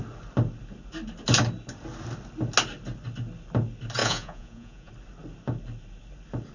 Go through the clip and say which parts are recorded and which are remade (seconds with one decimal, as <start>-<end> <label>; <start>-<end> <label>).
0.0-4.0 recorded; 4.0-4.9 remade; 4.9-6.5 recorded

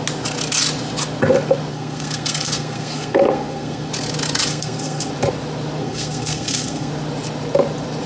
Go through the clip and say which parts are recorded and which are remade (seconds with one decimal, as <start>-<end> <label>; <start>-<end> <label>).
0.0-1.7 recorded; 1.7-3.9 remade; 3.9-4.5 recorded; 4.5-5.1 remade; 5.1-5.8 recorded; 5.8-6.9 remade; 6.9-8.1 recorded